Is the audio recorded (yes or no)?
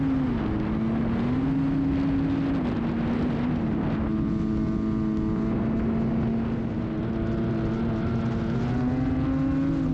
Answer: yes